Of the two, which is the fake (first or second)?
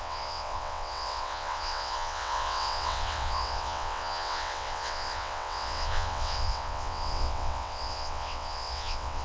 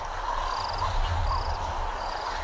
first